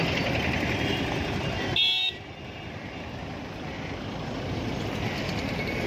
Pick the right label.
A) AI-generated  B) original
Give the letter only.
B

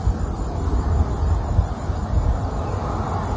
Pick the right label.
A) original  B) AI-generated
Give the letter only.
A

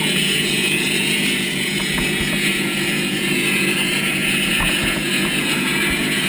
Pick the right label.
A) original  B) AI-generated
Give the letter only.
B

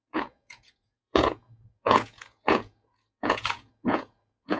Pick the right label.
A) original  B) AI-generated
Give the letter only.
B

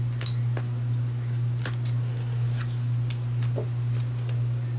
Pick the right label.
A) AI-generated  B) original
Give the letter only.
B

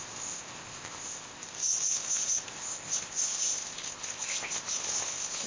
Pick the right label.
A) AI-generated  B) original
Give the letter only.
A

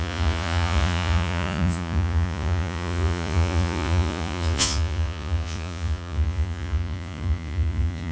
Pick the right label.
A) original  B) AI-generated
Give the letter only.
B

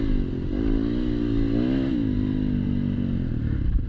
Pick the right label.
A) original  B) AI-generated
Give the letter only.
A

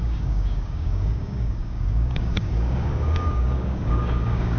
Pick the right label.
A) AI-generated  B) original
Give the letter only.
A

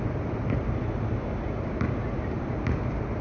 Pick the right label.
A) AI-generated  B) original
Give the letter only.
B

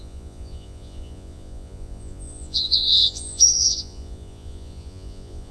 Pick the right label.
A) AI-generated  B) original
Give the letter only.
A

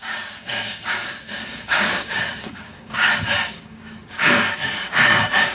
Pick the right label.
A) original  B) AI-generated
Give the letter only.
B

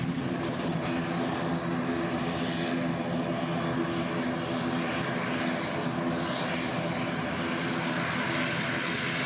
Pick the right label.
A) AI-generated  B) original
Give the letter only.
B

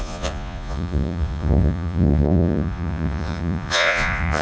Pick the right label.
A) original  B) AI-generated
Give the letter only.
B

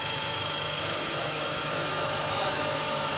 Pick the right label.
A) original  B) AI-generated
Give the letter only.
B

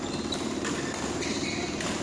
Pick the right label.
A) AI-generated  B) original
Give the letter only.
B